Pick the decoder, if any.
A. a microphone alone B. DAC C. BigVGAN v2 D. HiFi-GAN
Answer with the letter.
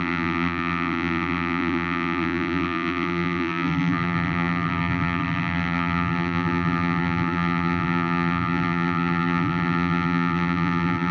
C